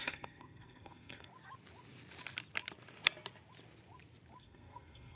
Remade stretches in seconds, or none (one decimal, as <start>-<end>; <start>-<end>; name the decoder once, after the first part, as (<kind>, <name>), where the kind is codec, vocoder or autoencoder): 0.0-1.3 (codec, SNAC); 4.4-5.2